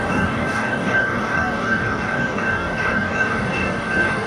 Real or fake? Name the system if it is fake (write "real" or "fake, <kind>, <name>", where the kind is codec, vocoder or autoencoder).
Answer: fake, codec, DAC